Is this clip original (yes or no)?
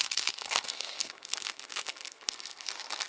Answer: no